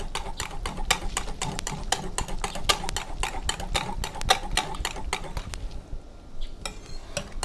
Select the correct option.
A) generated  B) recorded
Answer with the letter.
B